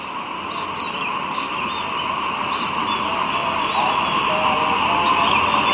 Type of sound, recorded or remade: recorded